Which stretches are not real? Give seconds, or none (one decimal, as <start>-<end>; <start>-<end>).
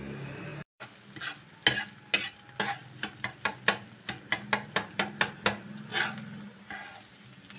0.5-1.1; 2.8-3.5; 5.9-6.6